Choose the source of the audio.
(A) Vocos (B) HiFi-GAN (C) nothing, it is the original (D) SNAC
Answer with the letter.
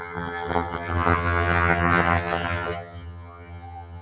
B